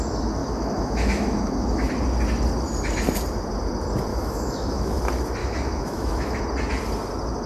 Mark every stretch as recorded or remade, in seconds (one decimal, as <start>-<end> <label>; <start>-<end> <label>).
0.0-0.4 recorded; 0.4-1.9 remade; 1.9-4.1 recorded; 4.1-5.0 remade; 5.0-5.4 recorded; 5.4-6.4 remade; 6.4-7.5 recorded